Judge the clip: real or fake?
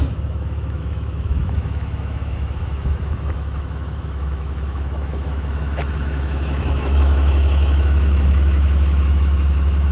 fake